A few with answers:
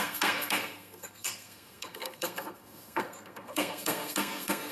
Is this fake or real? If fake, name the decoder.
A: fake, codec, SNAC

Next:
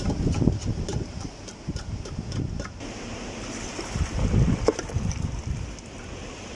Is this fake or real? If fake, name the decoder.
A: real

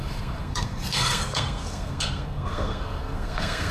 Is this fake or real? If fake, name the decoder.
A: fake, codec, SNAC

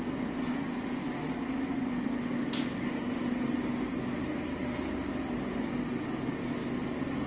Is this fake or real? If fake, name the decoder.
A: real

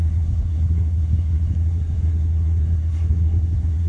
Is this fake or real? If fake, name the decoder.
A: fake, codec, SNAC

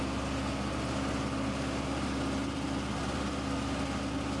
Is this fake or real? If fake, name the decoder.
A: real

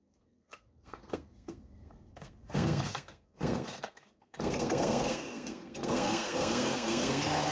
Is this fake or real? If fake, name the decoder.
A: fake, codec, SNAC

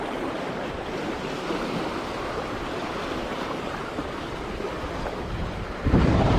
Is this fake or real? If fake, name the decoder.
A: real